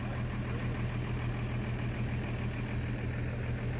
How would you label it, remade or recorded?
recorded